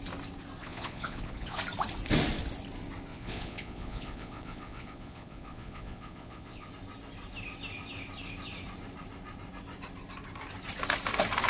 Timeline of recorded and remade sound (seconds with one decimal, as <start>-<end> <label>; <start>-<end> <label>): 0.0-0.6 recorded; 0.6-1.6 remade; 1.6-3.1 recorded; 3.1-6.7 remade; 6.7-11.5 recorded